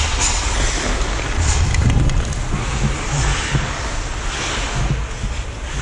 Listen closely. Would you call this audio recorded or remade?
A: recorded